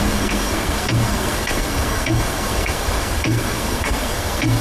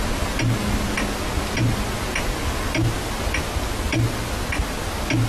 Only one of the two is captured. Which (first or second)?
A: second